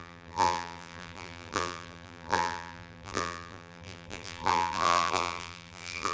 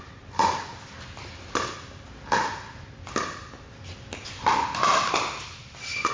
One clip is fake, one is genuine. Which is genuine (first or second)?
second